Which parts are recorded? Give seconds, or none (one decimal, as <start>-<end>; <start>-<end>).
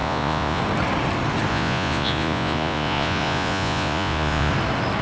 0.6-1.5; 4.5-5.0